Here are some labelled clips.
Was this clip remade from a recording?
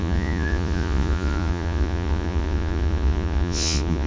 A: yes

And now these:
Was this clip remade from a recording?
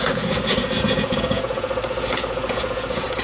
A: yes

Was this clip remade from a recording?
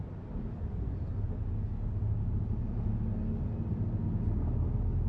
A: no